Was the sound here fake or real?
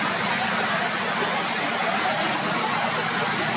real